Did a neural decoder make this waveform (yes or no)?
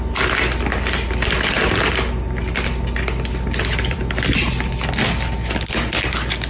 no